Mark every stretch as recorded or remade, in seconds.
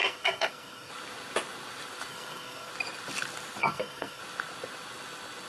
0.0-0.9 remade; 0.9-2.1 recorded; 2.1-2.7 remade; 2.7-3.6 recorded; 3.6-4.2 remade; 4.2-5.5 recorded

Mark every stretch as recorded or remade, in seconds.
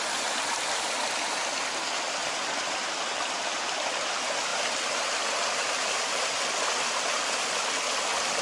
0.0-2.2 recorded; 2.2-2.9 remade; 2.9-8.4 recorded